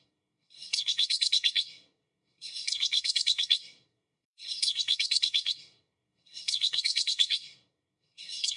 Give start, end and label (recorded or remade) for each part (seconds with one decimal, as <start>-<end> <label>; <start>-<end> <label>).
0.0-8.6 remade